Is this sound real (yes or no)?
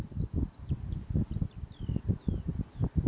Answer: yes